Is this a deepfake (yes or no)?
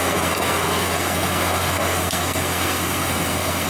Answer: yes